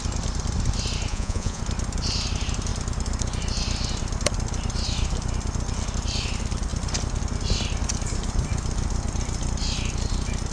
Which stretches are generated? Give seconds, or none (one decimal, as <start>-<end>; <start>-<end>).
1.1-1.6